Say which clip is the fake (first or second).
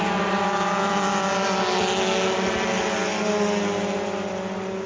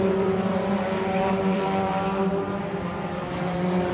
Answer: second